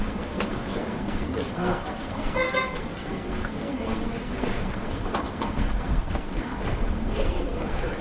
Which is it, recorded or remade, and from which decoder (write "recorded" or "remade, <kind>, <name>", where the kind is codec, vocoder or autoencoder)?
remade, codec, SNAC